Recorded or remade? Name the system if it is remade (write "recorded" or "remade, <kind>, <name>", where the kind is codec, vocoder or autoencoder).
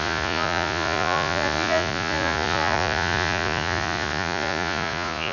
remade, vocoder, Vocos